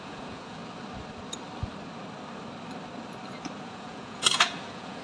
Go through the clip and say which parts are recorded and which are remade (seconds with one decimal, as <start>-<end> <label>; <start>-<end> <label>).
0.0-0.6 remade; 0.6-3.6 recorded; 3.6-5.0 remade